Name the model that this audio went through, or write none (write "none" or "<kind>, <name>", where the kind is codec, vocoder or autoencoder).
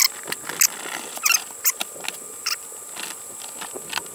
none